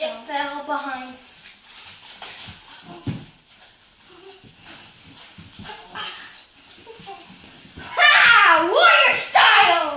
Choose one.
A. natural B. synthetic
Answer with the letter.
A